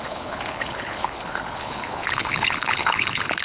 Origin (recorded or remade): remade